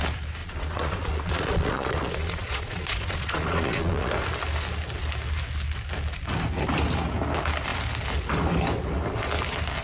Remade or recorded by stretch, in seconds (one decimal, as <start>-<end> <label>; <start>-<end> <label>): 0.0-0.4 recorded; 0.4-4.1 remade; 4.1-9.8 recorded